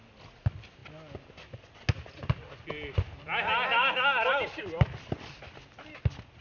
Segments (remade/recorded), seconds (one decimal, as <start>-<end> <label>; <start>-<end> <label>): 0.0-6.4 recorded